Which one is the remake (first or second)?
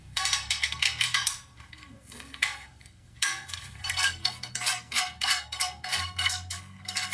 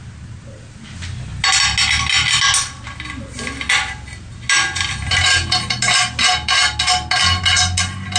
first